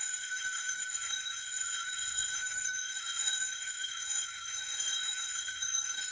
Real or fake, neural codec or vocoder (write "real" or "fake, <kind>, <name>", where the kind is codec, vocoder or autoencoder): fake, autoencoder, DAC-VAE